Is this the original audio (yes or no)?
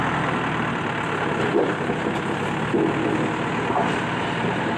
yes